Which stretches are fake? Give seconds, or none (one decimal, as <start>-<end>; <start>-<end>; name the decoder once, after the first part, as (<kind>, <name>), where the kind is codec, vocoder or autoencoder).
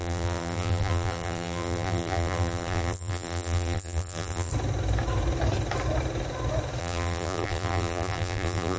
0.0-4.5 (vocoder, BigVGAN v2); 6.8-8.8